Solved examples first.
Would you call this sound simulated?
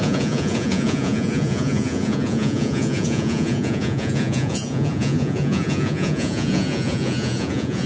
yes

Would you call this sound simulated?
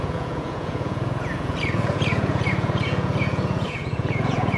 yes